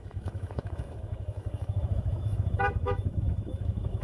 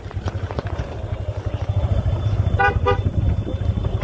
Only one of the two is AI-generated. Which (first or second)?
first